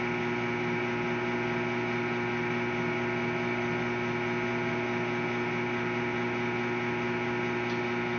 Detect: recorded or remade recorded